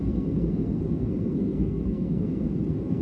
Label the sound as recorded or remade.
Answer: remade